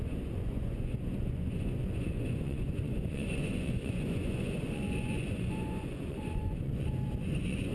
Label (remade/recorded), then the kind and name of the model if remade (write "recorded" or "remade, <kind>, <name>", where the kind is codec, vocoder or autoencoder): remade, vocoder, Vocos